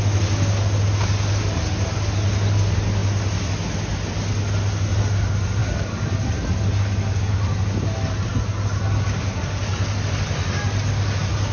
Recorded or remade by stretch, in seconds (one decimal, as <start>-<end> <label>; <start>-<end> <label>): 0.0-11.5 recorded